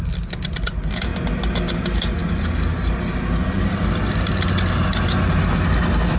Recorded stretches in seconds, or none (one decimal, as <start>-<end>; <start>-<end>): 0.0-6.2